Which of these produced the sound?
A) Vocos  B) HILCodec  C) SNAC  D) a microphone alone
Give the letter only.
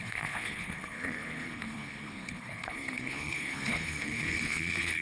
B